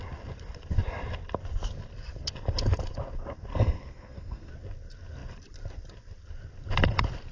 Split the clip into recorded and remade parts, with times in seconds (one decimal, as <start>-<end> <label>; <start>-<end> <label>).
0.0-3.5 recorded; 3.5-4.5 remade; 4.5-7.3 recorded